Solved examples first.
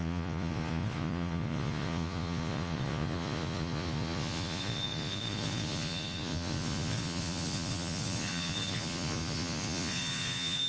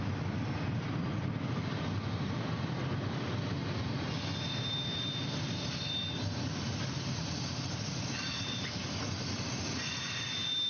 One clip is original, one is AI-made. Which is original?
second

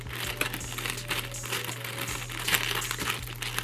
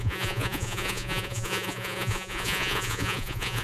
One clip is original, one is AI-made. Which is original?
first